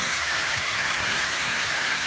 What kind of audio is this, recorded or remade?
remade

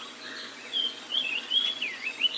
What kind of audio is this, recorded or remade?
remade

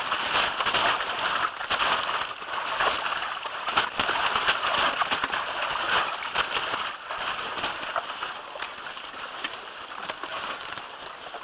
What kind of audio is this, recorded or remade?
recorded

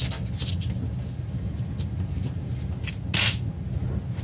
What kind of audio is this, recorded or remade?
recorded